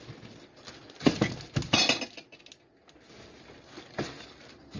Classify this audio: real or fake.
real